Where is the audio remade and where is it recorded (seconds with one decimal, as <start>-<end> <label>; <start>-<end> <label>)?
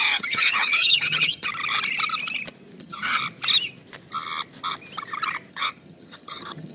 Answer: 0.0-1.5 remade; 1.5-2.8 recorded; 2.8-3.2 remade; 3.2-5.5 recorded; 5.5-6.7 remade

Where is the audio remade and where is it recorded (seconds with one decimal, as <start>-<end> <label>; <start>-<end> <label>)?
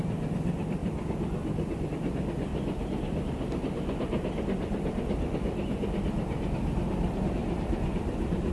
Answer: 0.0-8.5 recorded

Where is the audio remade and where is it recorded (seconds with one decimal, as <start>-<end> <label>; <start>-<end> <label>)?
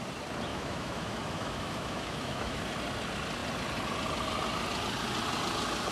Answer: 0.0-0.5 recorded; 0.5-2.6 remade; 2.6-5.9 recorded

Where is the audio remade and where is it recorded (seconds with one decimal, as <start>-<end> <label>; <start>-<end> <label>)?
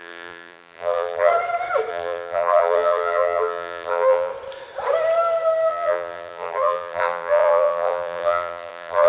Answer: 0.0-1.3 remade; 1.3-1.9 recorded; 1.9-4.3 remade; 4.3-5.7 recorded; 5.7-9.1 remade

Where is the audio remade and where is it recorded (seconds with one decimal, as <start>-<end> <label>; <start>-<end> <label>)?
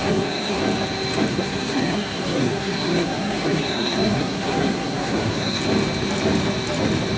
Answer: 0.0-0.6 remade; 0.6-1.3 recorded; 1.3-5.6 remade; 5.6-7.2 recorded